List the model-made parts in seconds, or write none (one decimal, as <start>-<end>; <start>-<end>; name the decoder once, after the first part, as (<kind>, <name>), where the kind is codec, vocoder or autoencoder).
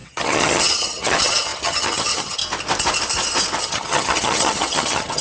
0.0-2.4 (vocoder, HiFi-GAN); 3.6-5.2